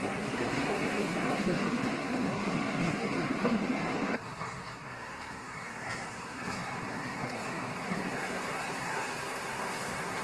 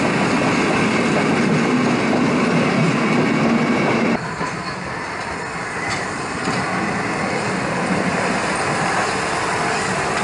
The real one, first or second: second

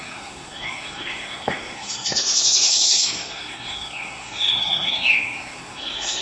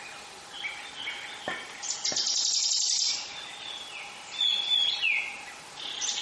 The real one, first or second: second